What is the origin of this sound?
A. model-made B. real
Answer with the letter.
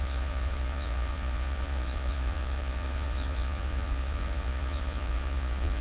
A